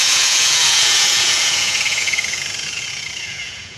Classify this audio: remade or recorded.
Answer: remade